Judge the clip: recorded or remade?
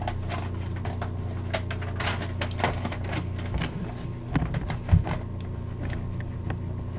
recorded